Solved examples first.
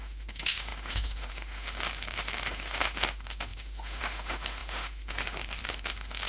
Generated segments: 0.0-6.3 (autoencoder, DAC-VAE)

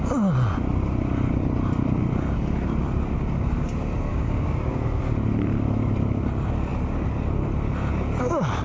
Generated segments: 4.1-5.0 (codec, DAC)

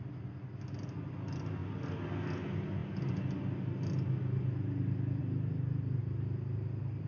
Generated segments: none

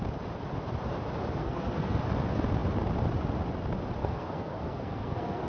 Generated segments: 1.4-2.0 (codec, SNAC); 4.0-5.5

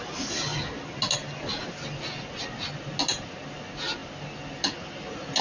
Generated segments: none